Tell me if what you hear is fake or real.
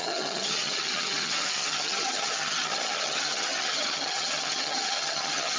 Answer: fake